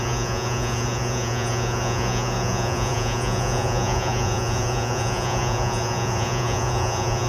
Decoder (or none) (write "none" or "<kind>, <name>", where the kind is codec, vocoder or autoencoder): vocoder, Vocos